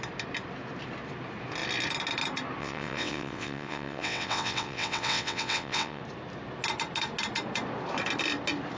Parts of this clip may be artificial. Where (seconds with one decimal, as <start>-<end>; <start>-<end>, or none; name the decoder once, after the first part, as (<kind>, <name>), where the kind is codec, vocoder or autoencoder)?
2.6-6.0 (vocoder, WaveNeXt)